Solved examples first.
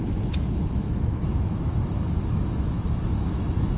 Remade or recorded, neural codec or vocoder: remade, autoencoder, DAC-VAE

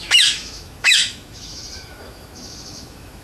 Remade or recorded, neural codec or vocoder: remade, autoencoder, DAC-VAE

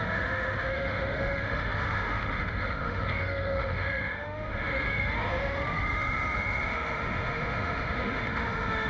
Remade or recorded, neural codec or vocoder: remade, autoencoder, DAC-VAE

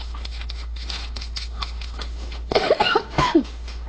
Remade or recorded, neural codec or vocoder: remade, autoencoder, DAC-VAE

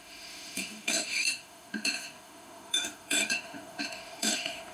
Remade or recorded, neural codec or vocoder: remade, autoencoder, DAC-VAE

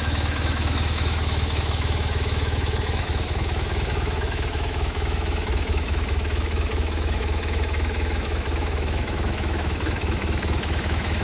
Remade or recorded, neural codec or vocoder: remade, autoencoder, DAC-VAE